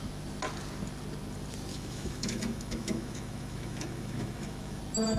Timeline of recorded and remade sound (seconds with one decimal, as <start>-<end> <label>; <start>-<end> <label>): 0.0-1.7 recorded; 1.7-4.8 remade; 4.8-5.2 recorded